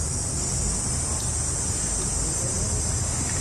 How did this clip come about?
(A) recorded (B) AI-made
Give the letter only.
A